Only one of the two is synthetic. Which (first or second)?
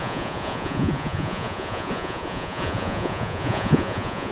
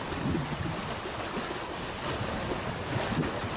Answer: first